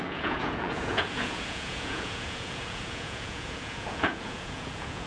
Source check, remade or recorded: remade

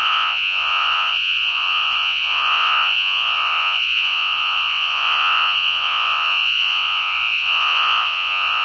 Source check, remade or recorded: remade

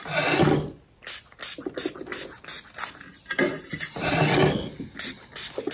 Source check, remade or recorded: recorded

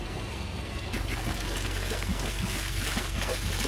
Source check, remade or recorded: remade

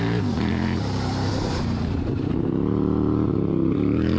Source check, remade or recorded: remade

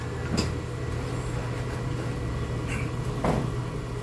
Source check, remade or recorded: recorded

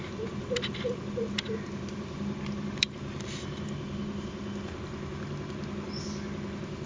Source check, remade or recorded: recorded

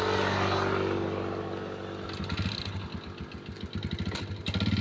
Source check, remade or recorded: recorded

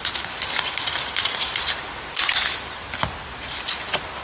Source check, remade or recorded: recorded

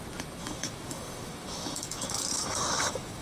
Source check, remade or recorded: remade